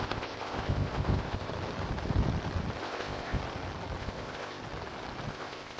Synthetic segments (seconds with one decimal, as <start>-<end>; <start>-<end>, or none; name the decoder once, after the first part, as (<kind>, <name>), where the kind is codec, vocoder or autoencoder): 0.0-1.5 (codec, ZipCodec); 2.8-3.4; 4.0-4.6; 5.3-5.8